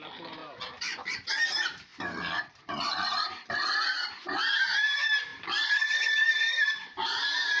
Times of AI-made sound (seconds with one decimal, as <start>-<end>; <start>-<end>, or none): 0.0-0.4; 1.5-1.9; 2.6-5.3; 6.3-7.6

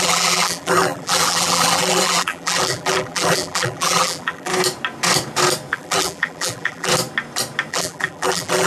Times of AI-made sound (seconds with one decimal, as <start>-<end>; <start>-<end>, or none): 0.0-4.5; 5.7-6.9; 7.7-8.7

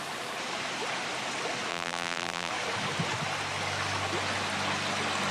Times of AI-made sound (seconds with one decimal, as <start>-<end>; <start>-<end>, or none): 1.7-2.5